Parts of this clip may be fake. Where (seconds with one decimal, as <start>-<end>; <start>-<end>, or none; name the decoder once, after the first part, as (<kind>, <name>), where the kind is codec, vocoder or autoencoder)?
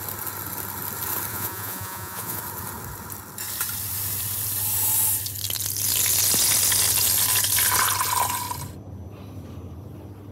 1.3-2.4 (vocoder, Vocos)